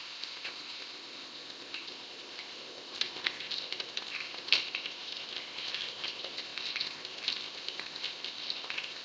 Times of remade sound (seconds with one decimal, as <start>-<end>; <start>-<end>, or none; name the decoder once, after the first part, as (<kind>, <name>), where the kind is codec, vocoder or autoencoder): 0.0-9.0 (codec, ZipCodec)